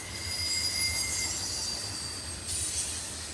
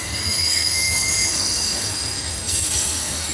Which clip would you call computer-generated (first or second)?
second